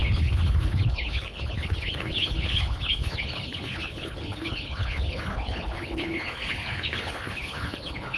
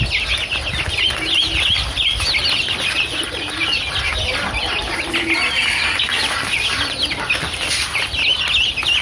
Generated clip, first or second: first